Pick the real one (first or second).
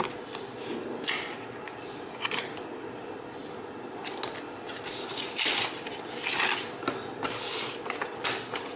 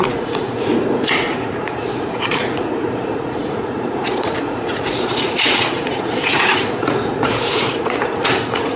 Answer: first